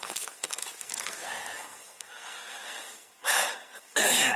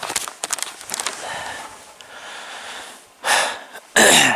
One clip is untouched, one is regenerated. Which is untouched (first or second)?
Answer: second